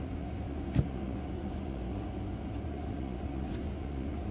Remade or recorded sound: remade